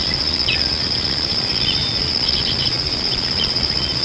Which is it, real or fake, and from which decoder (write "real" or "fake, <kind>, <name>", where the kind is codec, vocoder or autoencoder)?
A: fake, vocoder, Vocos